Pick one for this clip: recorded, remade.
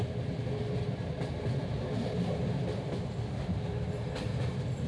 recorded